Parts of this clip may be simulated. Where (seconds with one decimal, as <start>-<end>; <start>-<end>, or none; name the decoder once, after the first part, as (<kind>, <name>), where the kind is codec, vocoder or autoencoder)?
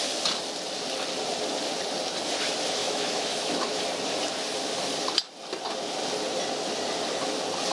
2.8-3.8 (autoencoder, DAC-VAE)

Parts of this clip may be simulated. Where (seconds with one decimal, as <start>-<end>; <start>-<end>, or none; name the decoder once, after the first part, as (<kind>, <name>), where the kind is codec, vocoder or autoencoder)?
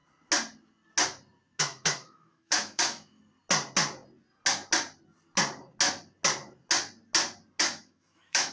1.6-3.2 (autoencoder, DAC-VAE); 7.6-8.5